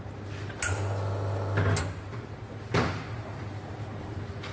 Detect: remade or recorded recorded